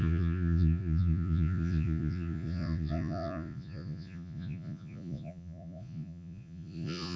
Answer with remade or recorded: remade